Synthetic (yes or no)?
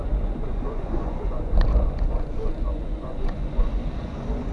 yes